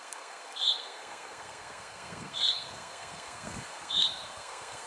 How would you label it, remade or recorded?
remade